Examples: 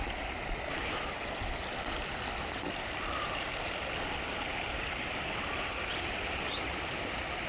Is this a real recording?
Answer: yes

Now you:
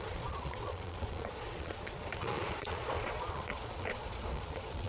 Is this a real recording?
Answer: no